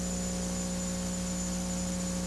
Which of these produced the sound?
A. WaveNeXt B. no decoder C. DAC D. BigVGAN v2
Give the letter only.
B